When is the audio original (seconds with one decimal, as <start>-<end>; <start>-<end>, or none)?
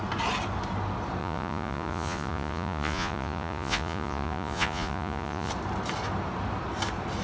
0.0-1.2; 5.5-7.2